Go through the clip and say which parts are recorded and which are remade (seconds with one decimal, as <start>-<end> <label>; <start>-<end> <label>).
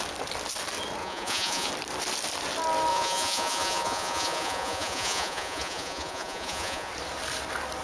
0.0-1.0 recorded; 1.0-1.7 remade; 1.7-2.9 recorded; 2.9-6.9 remade; 6.9-7.8 recorded